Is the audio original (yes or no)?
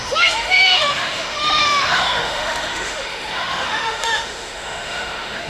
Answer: no